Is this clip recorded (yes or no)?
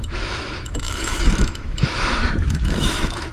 no